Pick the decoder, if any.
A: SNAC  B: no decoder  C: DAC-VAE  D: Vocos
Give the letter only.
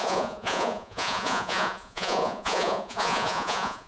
D